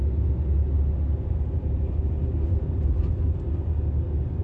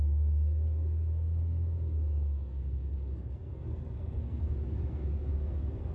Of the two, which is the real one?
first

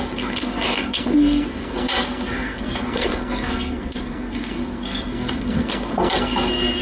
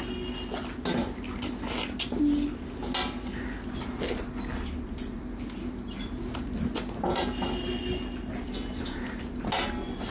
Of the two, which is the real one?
second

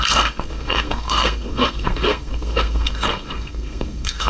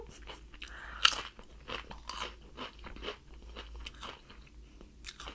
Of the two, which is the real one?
second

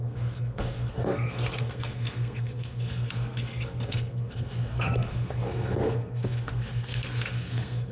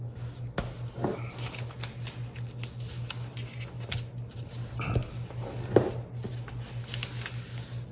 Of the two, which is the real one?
second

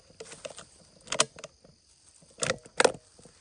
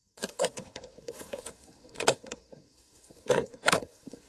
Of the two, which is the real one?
first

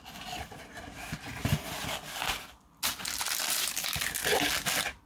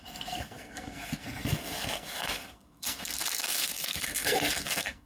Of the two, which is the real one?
first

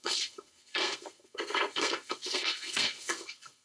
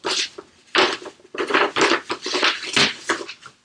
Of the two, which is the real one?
second